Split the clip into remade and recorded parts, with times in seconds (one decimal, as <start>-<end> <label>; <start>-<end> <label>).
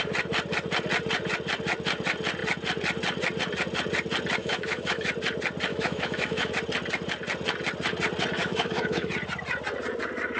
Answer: 0.0-4.4 recorded; 4.4-5.1 remade; 5.1-5.7 recorded; 5.7-6.5 remade; 6.5-8.4 recorded; 8.4-9.1 remade; 9.1-10.4 recorded